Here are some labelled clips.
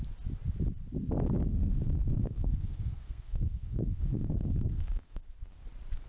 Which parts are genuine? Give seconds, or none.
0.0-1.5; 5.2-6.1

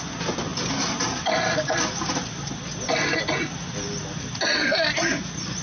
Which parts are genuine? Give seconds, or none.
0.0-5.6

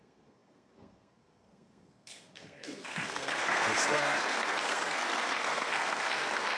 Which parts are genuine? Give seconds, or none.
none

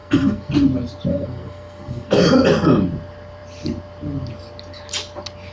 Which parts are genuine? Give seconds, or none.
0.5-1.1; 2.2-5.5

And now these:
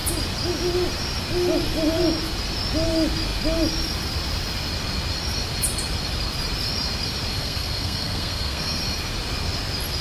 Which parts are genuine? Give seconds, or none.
0.0-7.4; 8.8-10.0

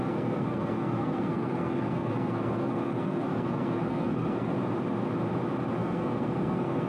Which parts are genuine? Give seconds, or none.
4.5-5.8

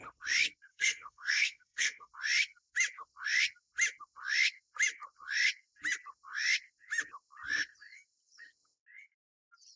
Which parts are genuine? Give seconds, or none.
0.0-0.7; 2.1-9.8